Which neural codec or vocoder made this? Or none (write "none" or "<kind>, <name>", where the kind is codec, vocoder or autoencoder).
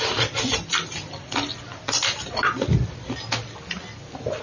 none